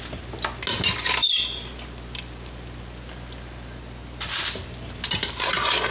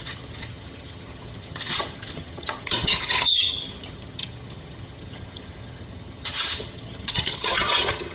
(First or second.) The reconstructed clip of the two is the second